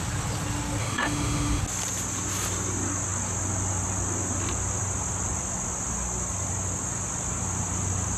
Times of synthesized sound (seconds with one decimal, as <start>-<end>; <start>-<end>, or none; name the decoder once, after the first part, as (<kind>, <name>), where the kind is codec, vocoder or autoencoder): 0.8-1.6 (autoencoder, DAC-VAE)